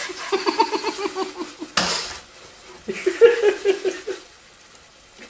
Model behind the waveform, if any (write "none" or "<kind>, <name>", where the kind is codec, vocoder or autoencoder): none